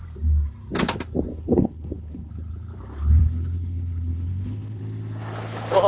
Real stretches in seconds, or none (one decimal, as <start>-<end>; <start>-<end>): 0.0-1.3; 2.3-3.2; 4.8-5.9